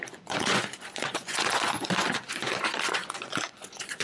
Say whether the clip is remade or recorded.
remade